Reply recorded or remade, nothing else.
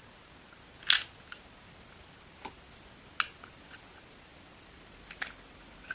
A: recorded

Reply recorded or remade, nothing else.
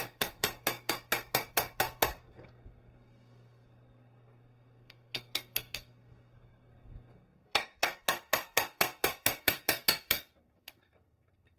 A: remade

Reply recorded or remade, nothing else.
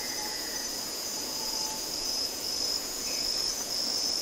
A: remade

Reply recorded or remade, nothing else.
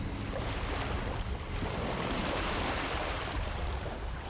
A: recorded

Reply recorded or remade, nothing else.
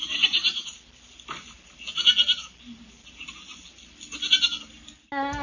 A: recorded